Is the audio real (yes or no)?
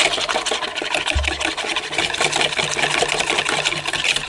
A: yes